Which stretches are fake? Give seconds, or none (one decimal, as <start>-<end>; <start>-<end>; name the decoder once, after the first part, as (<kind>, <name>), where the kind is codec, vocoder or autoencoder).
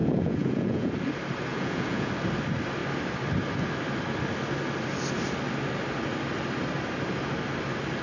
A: 0.0-0.9 (vocoder, Vocos); 1.5-2.1